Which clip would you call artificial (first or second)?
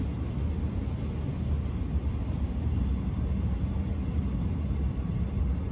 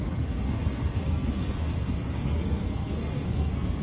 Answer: second